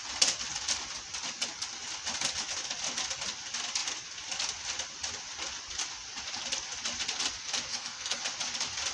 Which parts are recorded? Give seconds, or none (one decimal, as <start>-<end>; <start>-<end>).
0.0-7.7; 8.2-8.9